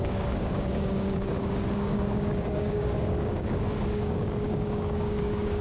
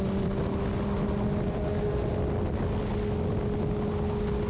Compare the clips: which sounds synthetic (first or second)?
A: first